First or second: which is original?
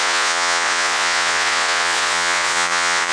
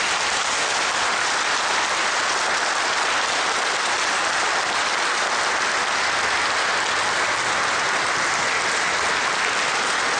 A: second